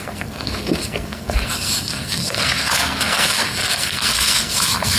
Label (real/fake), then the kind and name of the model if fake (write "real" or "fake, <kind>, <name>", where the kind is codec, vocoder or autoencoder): fake, codec, SNAC